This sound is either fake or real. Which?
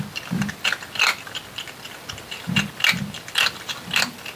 real